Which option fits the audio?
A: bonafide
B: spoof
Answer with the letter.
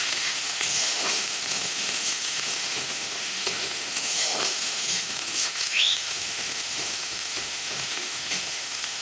B